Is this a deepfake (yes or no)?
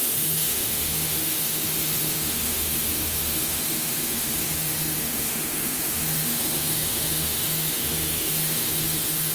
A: yes